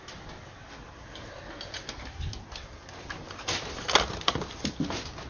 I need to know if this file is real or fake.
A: real